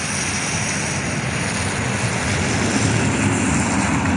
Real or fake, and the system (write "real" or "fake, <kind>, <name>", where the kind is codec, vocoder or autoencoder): real